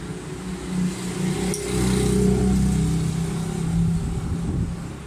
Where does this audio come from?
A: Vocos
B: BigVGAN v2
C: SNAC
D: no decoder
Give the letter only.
D